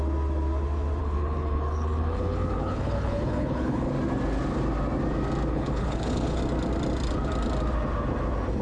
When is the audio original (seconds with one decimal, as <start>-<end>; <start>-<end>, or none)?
0.0-1.0; 3.9-5.5; 6.4-8.6